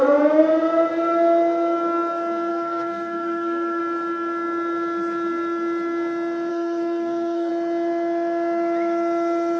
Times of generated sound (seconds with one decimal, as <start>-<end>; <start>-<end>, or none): 2.5-3.8; 6.5-7.5